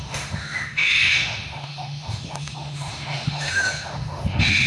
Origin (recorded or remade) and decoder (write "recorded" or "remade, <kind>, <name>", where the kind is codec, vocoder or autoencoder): remade, autoencoder, DAC-VAE